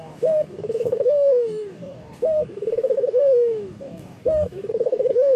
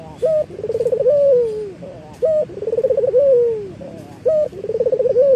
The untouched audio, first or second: second